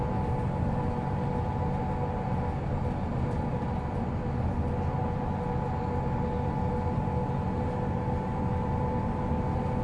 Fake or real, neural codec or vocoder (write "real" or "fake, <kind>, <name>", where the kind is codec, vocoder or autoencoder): real